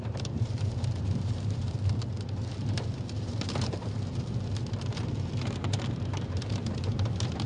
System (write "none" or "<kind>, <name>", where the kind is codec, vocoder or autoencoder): vocoder, BigVGAN v2